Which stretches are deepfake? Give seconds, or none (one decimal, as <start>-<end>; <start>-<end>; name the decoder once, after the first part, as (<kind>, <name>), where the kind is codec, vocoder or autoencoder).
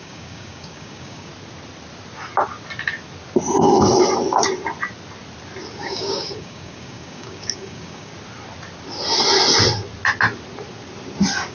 0.0-1.3 (codec, DAC); 5.8-8.1